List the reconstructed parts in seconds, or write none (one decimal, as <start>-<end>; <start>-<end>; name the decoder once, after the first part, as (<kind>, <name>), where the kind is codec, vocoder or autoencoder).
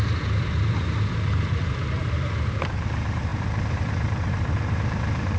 0.0-5.4 (vocoder, BigVGAN v2)